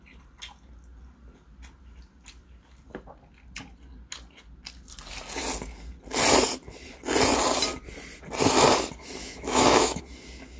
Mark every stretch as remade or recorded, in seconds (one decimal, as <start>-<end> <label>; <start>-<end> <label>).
0.0-9.2 recorded; 9.2-10.0 remade; 10.0-10.6 recorded